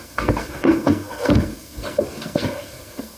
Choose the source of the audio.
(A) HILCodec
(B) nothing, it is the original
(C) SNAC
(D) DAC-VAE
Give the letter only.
C